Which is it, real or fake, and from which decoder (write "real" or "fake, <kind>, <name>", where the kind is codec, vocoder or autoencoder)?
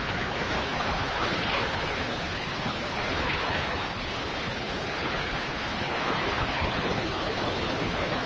fake, codec, HILCodec